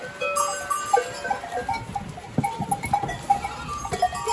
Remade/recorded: recorded